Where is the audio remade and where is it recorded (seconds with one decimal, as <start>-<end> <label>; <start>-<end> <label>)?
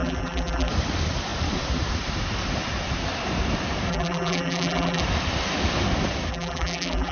0.0-0.7 remade; 0.7-3.9 recorded; 3.9-5.0 remade; 5.0-6.3 recorded; 6.3-7.1 remade